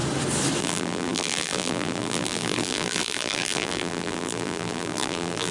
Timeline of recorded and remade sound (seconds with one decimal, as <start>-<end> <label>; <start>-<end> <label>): 0.0-0.6 recorded; 0.6-5.5 remade